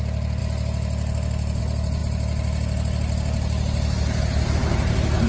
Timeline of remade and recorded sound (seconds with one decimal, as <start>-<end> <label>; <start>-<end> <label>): 0.0-5.3 recorded